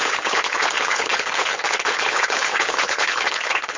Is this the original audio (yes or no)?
no